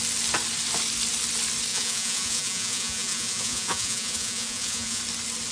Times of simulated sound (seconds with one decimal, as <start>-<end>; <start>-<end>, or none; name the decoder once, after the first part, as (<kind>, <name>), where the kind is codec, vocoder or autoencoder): 1.7-5.0 (vocoder, Vocos)